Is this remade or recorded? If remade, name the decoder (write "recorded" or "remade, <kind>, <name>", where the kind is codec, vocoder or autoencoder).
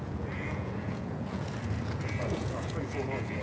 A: remade, vocoder, Vocos